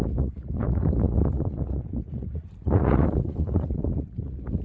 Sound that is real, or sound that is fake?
fake